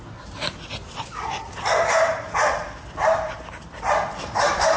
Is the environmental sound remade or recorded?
recorded